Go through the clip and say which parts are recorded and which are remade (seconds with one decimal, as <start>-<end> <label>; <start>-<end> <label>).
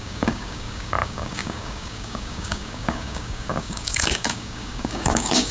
0.0-5.5 remade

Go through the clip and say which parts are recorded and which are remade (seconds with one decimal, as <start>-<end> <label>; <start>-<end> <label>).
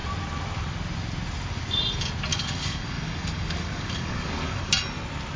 0.0-2.3 recorded; 2.3-4.7 remade; 4.7-5.4 recorded